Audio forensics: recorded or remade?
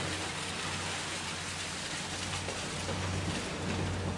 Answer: recorded